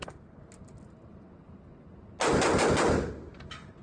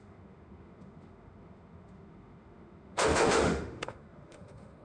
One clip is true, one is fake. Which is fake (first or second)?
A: second